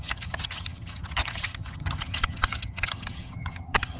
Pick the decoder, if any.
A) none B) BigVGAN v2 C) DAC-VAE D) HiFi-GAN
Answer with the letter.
D